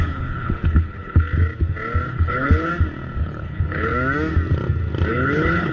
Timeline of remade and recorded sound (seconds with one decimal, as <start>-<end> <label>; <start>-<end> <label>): 0.0-1.3 remade; 1.3-2.1 recorded; 2.1-2.7 remade; 2.7-3.2 recorded; 3.2-3.9 remade; 3.9-5.1 recorded; 5.1-5.7 remade